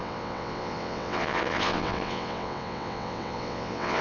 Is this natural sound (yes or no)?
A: no